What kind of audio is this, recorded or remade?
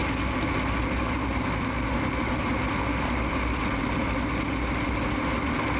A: recorded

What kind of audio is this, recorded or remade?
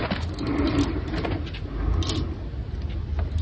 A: recorded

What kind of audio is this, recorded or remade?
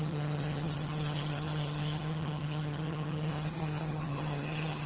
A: remade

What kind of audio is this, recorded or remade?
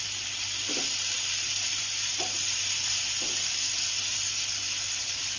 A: recorded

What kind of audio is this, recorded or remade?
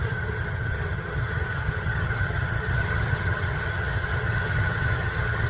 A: remade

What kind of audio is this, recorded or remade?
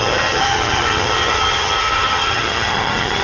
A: remade